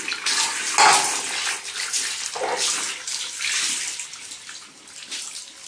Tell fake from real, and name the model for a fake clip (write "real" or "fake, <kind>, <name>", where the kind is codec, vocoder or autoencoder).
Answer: real